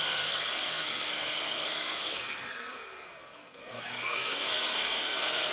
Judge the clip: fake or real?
fake